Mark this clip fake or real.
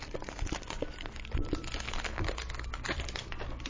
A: fake